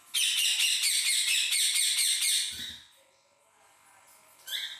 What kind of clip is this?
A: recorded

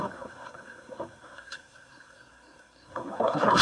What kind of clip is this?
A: remade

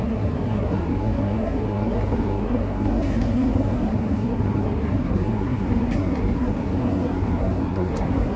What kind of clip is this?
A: remade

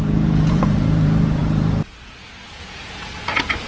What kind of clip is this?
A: remade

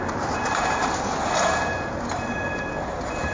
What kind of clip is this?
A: recorded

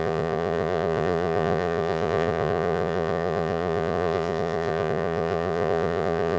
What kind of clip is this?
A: remade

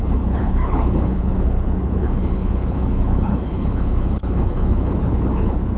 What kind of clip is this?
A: remade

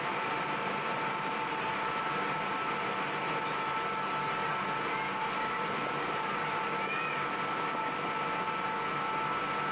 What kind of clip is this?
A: recorded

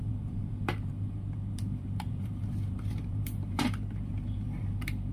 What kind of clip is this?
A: remade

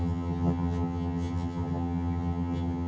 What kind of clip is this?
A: remade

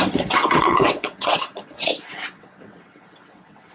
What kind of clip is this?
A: remade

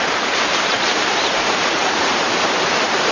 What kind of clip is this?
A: remade